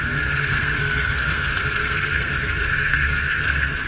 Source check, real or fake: fake